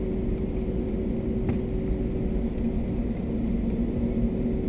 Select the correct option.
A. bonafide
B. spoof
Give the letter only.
A